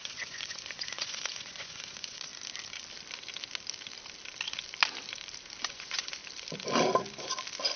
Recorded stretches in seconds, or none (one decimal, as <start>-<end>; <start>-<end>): 2.3-5.6; 6.2-7.8